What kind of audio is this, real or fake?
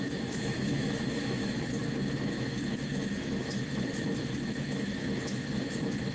fake